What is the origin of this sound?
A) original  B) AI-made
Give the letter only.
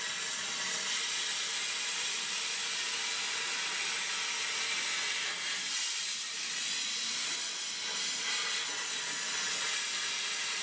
A